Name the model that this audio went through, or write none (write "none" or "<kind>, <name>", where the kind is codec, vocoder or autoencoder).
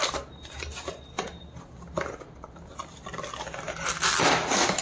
none